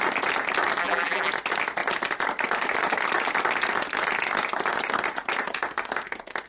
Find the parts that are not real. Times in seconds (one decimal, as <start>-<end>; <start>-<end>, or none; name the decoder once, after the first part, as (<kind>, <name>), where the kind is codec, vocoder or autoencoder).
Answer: 0.8-1.3 (vocoder, BigVGAN v2)